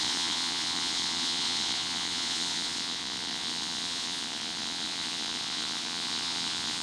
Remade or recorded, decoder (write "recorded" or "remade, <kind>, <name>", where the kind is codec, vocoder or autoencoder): remade, vocoder, Vocos